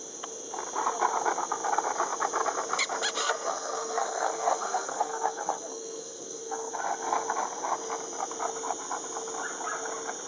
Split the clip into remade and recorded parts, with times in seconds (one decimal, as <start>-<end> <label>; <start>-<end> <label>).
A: 0.0-3.2 recorded; 3.2-6.7 remade; 6.7-10.3 recorded